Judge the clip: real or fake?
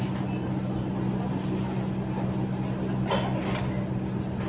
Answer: real